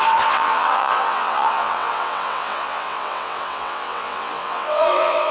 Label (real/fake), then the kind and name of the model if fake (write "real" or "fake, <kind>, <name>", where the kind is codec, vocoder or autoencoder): fake, vocoder, WaveNeXt